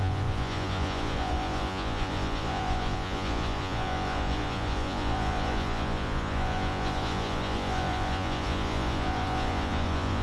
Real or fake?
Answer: fake